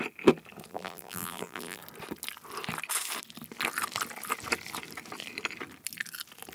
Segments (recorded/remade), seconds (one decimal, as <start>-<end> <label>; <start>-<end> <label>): 0.0-0.7 recorded; 0.7-1.8 remade; 1.8-6.5 recorded